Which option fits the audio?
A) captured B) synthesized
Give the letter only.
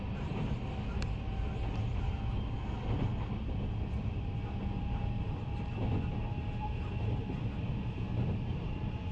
A